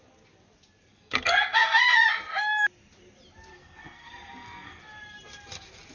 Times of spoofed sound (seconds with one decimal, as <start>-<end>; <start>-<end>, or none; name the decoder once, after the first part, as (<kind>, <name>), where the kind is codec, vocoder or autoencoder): 0.9-1.8 (codec, SNAC); 3.5-4.8